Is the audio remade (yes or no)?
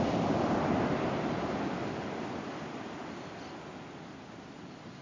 no